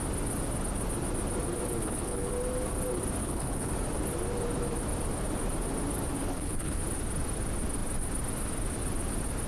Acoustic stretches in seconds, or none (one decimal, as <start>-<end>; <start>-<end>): 0.0-1.8; 2.3-3.2; 3.7-6.2; 6.8-9.5